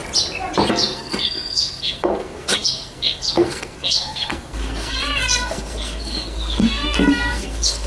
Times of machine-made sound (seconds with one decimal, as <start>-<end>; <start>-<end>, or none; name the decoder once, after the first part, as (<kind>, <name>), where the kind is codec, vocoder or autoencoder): 0.7-7.9 (codec, SNAC)